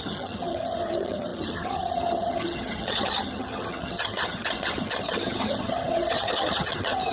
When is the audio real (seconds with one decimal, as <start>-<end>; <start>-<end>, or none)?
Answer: none